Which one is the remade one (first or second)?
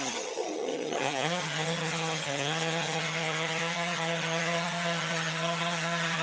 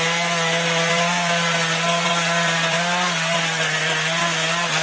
first